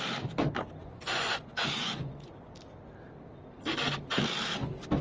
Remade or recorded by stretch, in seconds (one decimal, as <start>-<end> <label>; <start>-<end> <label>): 0.0-0.8 recorded; 0.8-2.5 remade; 2.5-5.0 recorded